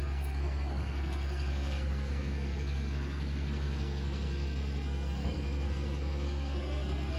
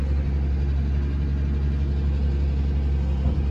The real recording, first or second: second